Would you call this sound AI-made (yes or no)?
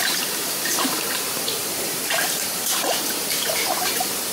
yes